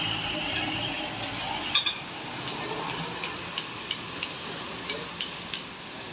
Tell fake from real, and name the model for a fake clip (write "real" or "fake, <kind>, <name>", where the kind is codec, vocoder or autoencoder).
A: real